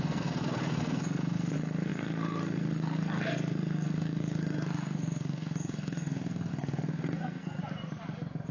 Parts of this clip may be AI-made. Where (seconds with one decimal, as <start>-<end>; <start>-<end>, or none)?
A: 0.0-7.6